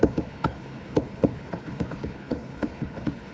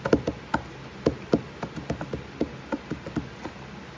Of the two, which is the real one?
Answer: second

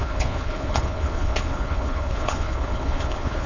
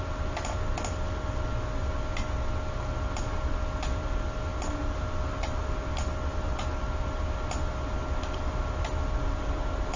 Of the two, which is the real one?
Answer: second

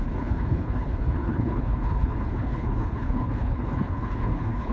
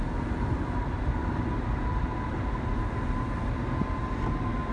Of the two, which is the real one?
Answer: second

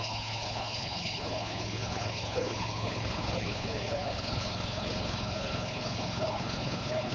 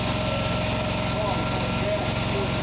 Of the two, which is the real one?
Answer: second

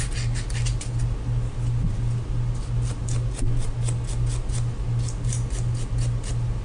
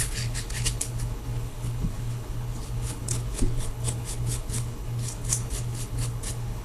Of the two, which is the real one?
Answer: first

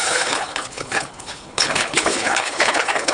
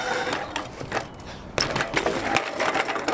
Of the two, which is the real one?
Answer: second